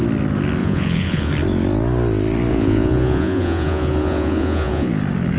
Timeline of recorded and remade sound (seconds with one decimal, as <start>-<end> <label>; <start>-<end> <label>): 0.0-0.6 recorded; 0.6-1.3 remade; 1.3-2.5 recorded; 2.5-4.9 remade; 4.9-5.4 recorded